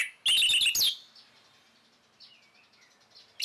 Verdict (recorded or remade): recorded